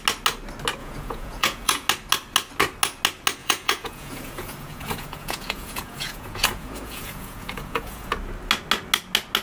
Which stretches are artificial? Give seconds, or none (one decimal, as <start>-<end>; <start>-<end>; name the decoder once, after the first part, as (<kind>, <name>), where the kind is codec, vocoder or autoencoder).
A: 0.8-1.9 (vocoder, Vocos); 3.4-8.1

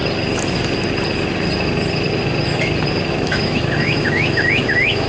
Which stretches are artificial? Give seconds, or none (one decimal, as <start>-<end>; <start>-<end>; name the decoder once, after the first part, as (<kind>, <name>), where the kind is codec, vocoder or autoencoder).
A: 3.1-5.1 (autoencoder, DAC-VAE)

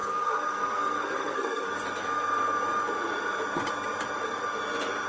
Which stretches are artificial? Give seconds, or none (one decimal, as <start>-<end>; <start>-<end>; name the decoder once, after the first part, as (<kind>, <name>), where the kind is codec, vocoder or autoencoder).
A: 0.0-1.7 (codec, SNAC)

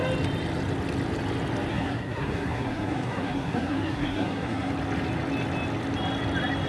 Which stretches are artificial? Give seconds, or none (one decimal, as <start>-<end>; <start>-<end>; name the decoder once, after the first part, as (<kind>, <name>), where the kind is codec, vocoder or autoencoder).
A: 1.7-4.7 (codec, SNAC)

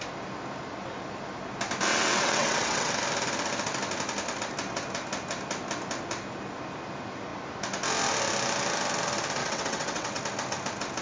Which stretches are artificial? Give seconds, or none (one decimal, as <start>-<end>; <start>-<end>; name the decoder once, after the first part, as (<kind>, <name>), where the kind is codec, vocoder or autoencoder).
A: 1.9-2.9 (vocoder, WaveNeXt); 9.4-10.2

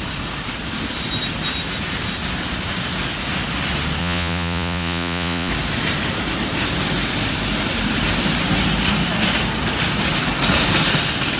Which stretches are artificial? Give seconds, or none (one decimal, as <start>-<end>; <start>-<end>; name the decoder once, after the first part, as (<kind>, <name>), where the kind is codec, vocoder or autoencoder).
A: 4.0-5.5 (vocoder, Vocos)

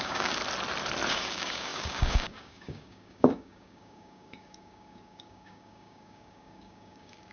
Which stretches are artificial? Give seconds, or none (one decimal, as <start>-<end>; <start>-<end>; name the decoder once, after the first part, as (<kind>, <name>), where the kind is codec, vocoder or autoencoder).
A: 0.0-0.4 (codec, DAC); 1.1-7.3